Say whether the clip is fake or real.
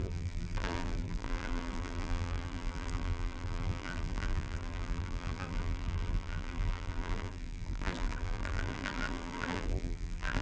fake